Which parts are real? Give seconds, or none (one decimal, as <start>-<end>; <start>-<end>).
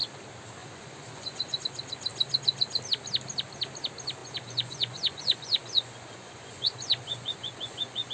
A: 0.0-0.6; 1.6-4.2